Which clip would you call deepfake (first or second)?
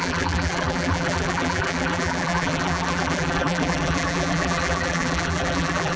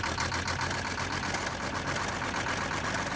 first